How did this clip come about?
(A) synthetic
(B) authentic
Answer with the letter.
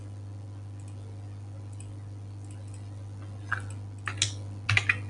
B